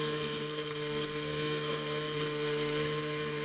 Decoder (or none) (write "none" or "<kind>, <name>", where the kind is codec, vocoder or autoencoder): codec, SNAC